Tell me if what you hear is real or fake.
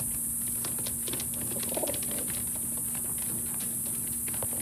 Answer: real